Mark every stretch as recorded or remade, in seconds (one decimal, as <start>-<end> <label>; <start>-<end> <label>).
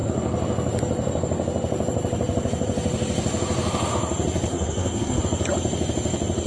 0.0-4.5 recorded; 4.5-5.2 remade; 5.2-6.5 recorded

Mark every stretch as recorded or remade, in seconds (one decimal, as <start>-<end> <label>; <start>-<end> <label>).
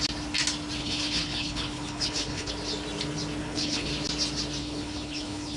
0.0-0.8 recorded; 0.8-2.5 remade; 2.5-3.4 recorded; 3.4-3.9 remade; 3.9-4.6 recorded; 4.6-5.6 remade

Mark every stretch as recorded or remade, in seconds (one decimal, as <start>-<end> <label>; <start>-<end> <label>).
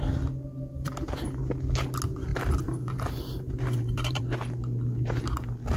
0.0-2.3 recorded; 2.3-4.2 remade; 4.2-5.8 recorded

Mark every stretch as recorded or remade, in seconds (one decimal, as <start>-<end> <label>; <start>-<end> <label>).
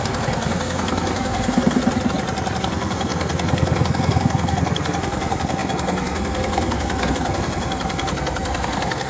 0.0-1.8 remade; 1.8-2.6 recorded; 2.6-9.1 remade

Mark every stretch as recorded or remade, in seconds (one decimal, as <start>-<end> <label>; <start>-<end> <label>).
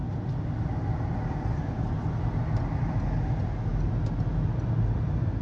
0.0-5.4 recorded